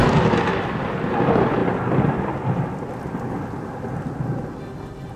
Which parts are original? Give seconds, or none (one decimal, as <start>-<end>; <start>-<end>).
0.0-5.2